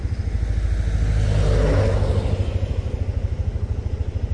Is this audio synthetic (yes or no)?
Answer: no